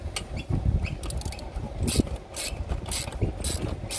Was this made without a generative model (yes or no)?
yes